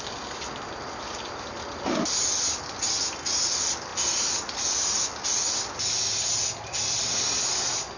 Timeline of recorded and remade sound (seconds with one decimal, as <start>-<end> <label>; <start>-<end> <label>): 0.0-8.0 recorded